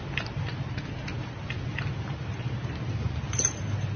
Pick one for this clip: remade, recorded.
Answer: recorded